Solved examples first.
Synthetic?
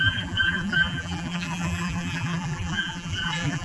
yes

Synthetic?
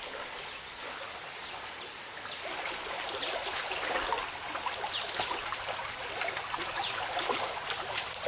no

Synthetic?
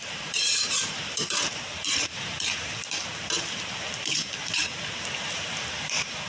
yes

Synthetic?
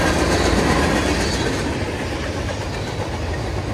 no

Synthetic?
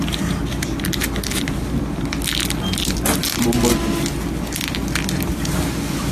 no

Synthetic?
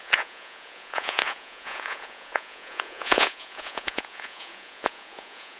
yes